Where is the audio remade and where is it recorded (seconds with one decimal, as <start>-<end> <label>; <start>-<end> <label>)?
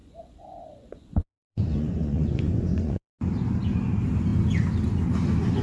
0.0-3.1 remade; 3.1-5.6 recorded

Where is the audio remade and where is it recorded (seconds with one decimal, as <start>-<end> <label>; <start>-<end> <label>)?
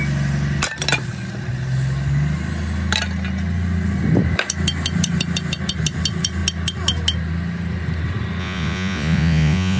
0.0-8.4 recorded; 8.4-9.8 remade